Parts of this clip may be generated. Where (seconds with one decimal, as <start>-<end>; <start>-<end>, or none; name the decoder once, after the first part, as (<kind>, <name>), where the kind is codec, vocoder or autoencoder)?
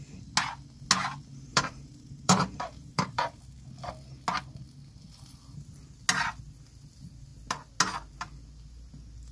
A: 1.5-3.4 (vocoder, BigVGAN v2)